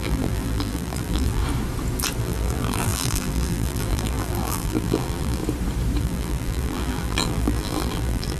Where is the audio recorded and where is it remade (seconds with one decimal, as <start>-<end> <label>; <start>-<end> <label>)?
0.0-1.4 remade; 1.4-2.2 recorded; 2.2-5.4 remade; 5.4-6.0 recorded; 6.0-8.4 remade